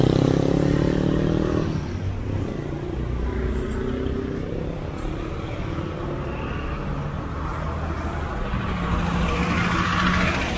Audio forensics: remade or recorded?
recorded